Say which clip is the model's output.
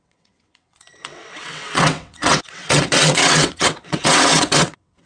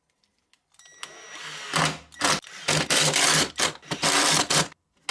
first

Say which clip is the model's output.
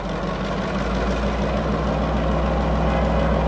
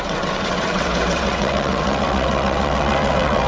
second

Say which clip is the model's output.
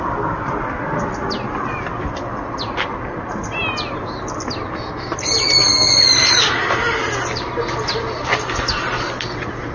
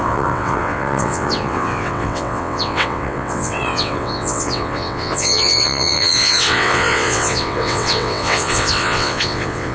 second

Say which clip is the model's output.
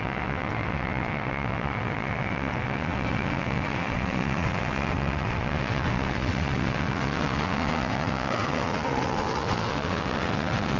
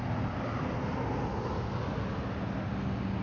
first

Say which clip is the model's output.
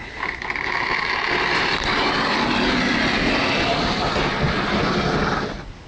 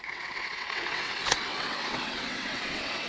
second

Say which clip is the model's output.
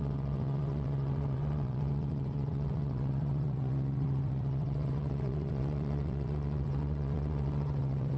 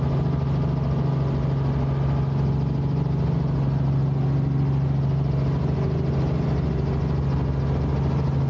first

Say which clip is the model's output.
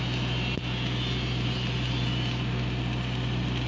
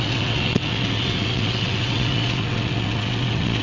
second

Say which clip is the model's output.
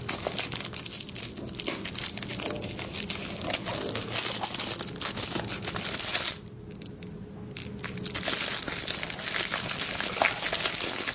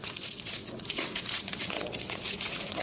second